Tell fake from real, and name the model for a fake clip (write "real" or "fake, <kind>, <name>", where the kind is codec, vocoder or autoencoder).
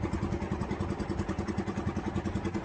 real